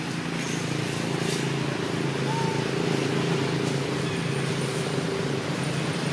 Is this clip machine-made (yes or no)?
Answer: no